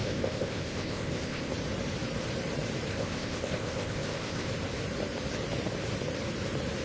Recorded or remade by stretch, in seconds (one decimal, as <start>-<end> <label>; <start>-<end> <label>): 0.0-1.5 remade; 1.5-2.9 recorded; 2.9-4.5 remade; 4.5-6.8 recorded